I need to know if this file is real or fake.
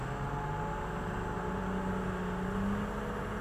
real